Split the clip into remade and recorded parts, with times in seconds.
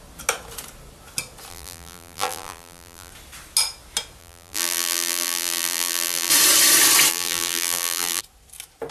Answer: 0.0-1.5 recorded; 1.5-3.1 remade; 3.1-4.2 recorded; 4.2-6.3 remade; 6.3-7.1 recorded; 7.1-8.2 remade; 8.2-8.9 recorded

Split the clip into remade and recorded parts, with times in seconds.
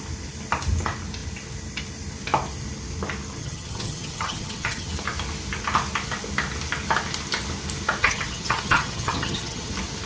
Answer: 0.0-3.4 recorded; 3.4-4.9 remade; 4.9-8.0 recorded; 8.0-9.7 remade; 9.7-10.1 recorded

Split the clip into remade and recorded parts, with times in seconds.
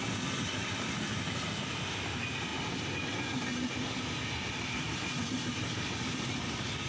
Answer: 0.0-6.9 recorded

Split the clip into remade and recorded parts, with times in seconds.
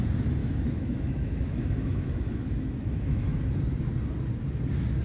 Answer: 0.0-0.4 recorded; 0.4-3.4 remade; 3.4-5.0 recorded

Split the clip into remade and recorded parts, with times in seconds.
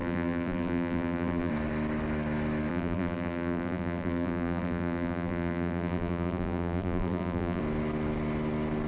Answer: 0.0-1.5 remade; 1.5-2.7 recorded; 2.7-7.6 remade; 7.6-8.9 recorded